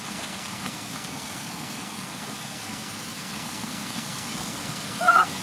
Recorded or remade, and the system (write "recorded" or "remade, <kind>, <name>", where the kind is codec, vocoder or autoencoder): remade, codec, SNAC